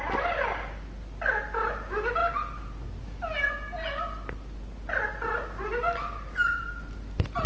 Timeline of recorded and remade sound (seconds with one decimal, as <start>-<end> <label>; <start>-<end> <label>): 0.0-7.5 recorded